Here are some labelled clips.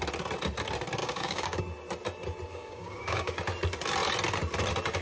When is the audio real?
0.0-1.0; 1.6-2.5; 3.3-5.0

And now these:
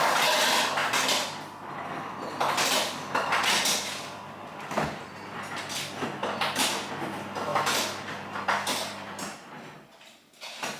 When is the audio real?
0.0-0.8; 5.6-6.2; 6.9-7.5; 9.5-10.8

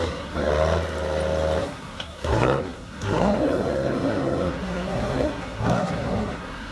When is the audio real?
0.5-1.6

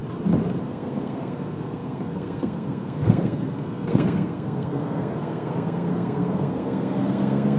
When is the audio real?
0.0-0.6

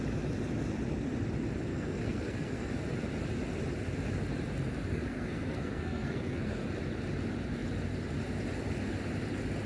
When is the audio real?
0.0-1.7; 2.7-4.9; 6.7-9.7